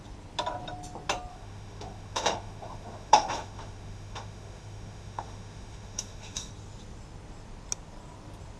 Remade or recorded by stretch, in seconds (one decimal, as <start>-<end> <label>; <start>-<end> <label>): 0.0-1.3 recorded; 1.3-6.5 remade; 6.5-8.6 recorded